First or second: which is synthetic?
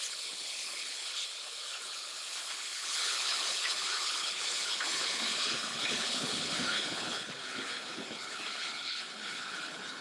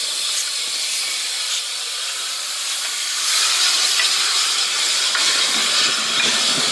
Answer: first